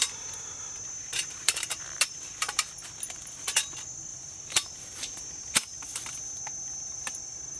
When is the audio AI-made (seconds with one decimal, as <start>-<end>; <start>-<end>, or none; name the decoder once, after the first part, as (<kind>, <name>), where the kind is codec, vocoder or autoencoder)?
1.1-2.6 (vocoder, BigVGAN v2); 4.1-6.0